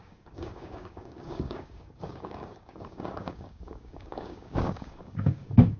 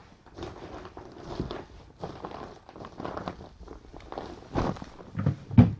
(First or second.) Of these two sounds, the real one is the second